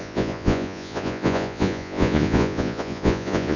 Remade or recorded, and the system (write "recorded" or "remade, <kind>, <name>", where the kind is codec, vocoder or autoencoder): remade, vocoder, Vocos